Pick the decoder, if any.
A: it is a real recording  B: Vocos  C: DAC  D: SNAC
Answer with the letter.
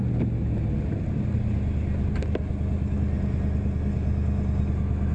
A